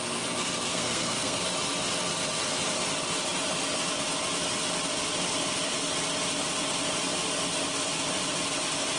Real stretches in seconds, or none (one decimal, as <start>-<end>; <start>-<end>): 0.0-0.7; 1.4-9.0